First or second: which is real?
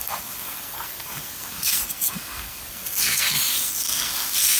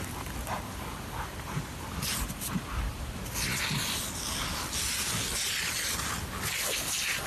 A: second